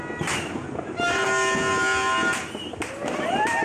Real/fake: real